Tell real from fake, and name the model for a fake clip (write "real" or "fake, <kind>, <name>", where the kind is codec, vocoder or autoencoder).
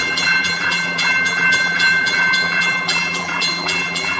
fake, vocoder, BigVGAN v2